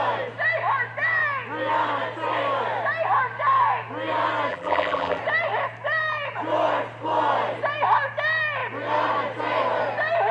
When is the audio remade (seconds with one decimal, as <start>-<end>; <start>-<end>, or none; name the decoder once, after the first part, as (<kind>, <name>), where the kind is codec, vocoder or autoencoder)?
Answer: 4.5-5.2 (vocoder, BigVGAN v2)